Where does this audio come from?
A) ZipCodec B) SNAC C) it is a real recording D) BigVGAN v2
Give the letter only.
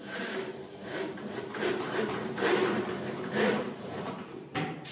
D